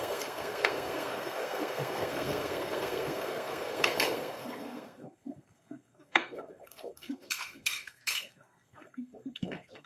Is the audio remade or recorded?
remade